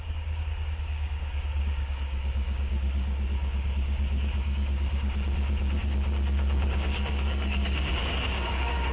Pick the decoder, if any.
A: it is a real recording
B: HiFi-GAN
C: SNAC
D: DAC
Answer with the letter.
D